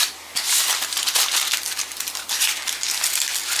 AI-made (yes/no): no